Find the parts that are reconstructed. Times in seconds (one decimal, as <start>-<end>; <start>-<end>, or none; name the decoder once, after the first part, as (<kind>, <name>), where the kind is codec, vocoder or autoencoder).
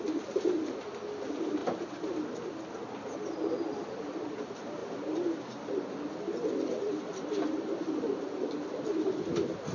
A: none